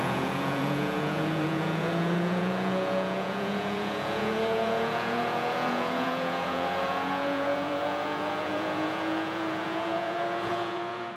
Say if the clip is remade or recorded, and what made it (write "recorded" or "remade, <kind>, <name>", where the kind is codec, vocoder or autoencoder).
remade, vocoder, Vocos